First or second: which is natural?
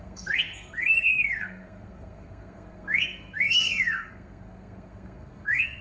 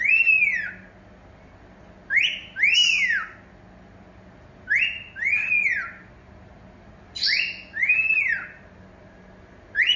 second